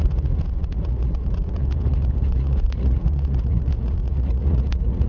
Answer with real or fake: fake